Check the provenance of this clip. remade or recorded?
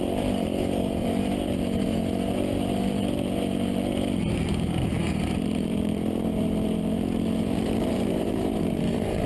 remade